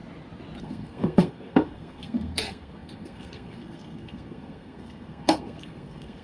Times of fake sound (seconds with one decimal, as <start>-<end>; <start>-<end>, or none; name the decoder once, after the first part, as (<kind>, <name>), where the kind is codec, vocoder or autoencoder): 0.6-6.2 (codec, SNAC)